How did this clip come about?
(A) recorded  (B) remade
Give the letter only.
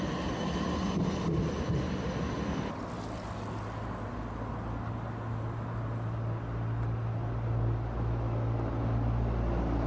A